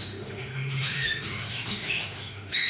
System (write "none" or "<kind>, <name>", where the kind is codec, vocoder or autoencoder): autoencoder, DAC-VAE